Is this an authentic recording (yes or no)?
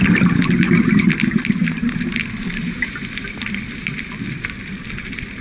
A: yes